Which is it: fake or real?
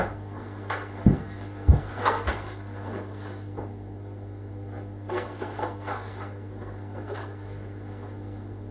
fake